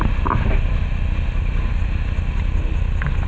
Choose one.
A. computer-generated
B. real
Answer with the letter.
B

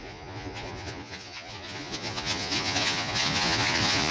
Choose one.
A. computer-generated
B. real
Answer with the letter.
A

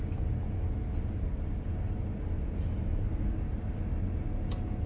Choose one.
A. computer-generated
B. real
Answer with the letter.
B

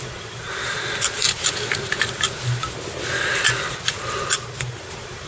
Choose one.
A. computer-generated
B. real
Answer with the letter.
B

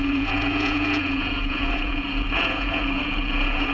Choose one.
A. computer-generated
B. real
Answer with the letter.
A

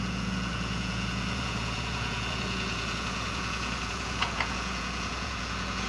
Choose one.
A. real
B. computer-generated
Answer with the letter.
B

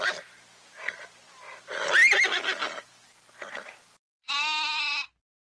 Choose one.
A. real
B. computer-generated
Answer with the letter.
A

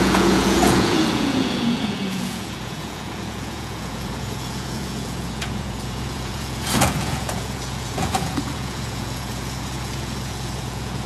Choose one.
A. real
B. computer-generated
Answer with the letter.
B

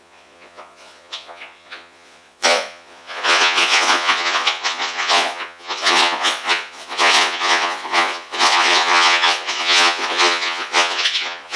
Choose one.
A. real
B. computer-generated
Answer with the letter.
B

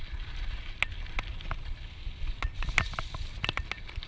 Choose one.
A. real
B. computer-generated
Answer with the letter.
A